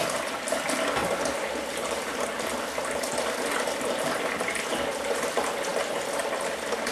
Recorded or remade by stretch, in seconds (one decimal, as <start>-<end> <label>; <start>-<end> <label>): 0.0-6.9 recorded